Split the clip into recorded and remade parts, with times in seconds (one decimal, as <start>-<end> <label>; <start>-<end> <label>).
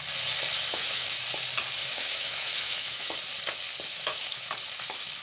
0.0-0.7 recorded; 0.7-1.2 remade; 1.2-1.8 recorded; 1.8-3.1 remade; 3.1-3.9 recorded; 3.9-4.5 remade; 4.5-5.2 recorded